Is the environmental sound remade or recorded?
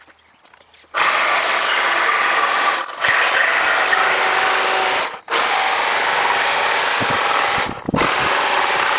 recorded